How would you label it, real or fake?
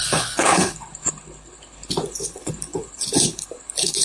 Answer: fake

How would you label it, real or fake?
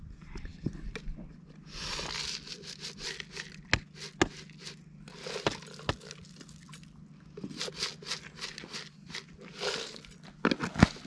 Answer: real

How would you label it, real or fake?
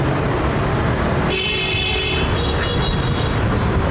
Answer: real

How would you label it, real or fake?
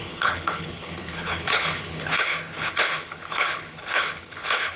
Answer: fake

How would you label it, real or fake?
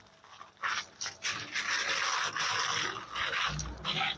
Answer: real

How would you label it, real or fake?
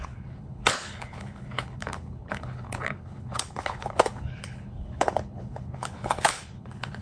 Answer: fake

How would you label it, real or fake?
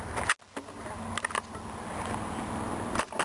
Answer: real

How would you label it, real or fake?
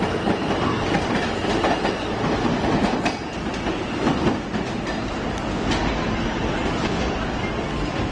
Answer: real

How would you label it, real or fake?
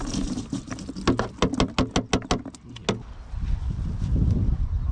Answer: real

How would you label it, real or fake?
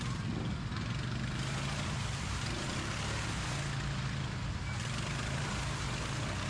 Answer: real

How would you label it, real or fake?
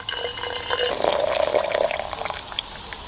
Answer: real